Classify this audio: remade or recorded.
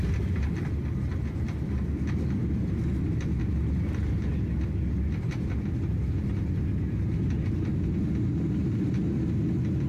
recorded